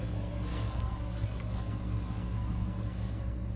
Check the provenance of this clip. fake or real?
fake